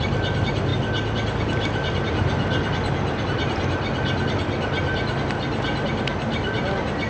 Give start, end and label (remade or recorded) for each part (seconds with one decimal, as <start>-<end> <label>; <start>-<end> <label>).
0.0-7.1 recorded